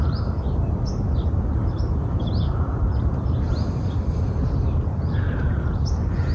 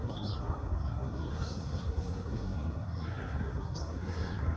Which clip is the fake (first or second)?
second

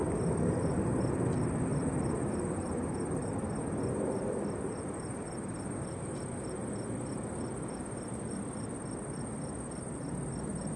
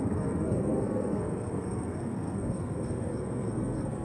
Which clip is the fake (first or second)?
second